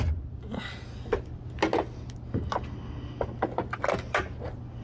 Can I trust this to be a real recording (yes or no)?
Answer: yes